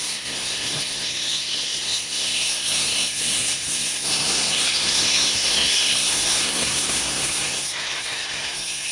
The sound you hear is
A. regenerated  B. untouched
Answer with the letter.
A